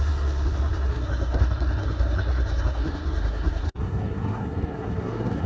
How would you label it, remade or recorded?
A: remade